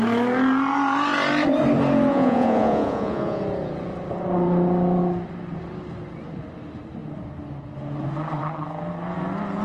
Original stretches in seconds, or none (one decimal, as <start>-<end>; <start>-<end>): 0.0-2.1; 3.4-9.6